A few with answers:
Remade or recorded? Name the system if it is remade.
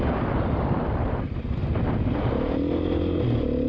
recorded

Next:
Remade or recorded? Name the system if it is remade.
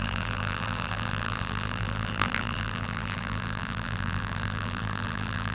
remade, vocoder, BigVGAN v2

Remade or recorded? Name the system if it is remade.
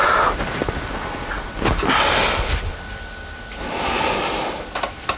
recorded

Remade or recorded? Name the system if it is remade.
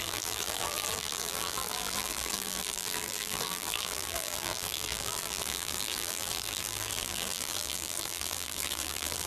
remade, vocoder, BigVGAN v2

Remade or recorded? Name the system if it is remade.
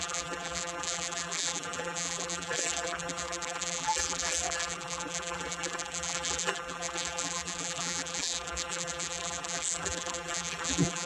remade, vocoder, BigVGAN v2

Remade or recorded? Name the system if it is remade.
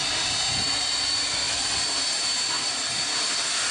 recorded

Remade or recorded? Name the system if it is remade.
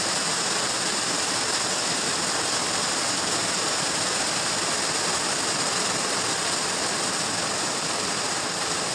remade, vocoder, BigVGAN v2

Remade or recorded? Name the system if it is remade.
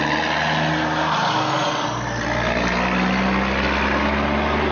recorded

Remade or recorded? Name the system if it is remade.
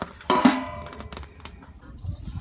remade, vocoder, BigVGAN v2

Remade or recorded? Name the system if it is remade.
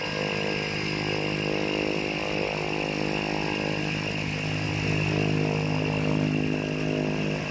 recorded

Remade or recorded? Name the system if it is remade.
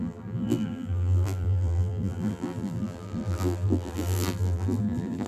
remade, vocoder, BigVGAN v2